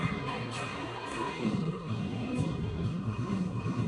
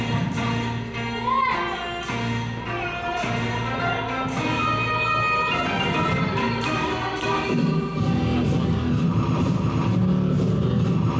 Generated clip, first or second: first